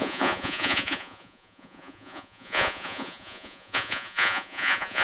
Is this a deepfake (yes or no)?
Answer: yes